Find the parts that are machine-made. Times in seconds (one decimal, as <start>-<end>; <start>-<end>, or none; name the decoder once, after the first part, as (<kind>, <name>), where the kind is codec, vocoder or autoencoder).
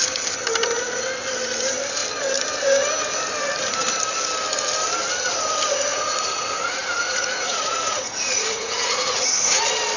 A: 5.9-9.6 (vocoder, Vocos)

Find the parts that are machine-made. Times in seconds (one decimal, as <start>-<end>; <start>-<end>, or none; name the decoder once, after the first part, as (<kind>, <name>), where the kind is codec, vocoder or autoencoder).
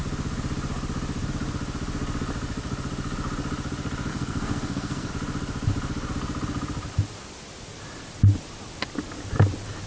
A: 4.1-5.1 (codec, SNAC)